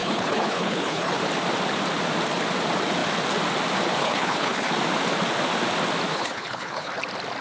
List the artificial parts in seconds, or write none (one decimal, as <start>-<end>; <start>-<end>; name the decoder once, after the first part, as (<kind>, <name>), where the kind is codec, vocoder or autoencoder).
0.0-1.2 (codec, HILCodec); 4.0-4.7; 6.1-6.9